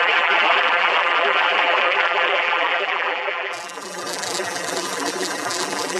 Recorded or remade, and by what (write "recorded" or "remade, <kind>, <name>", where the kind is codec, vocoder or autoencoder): remade, vocoder, BigVGAN v2